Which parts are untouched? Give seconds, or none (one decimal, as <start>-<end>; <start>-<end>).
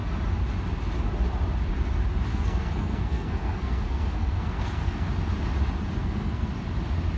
0.0-2.3; 5.1-6.0; 6.5-7.2